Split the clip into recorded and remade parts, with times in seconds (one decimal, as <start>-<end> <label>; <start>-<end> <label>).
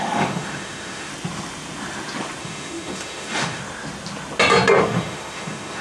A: 0.0-1.1 remade; 1.1-2.4 recorded; 2.4-3.6 remade; 3.6-4.8 recorded; 4.8-5.8 remade